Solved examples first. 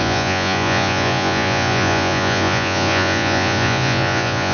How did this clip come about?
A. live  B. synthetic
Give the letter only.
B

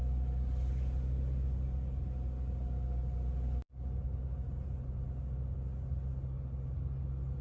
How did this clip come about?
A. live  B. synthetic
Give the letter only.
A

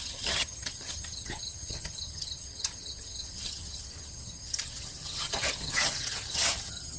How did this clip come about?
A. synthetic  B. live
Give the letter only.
A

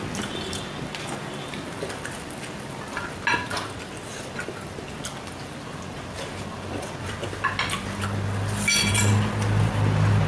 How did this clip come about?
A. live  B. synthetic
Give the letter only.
A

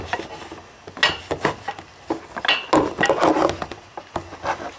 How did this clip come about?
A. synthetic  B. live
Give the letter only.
B